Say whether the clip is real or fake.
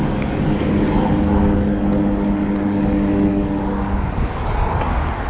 fake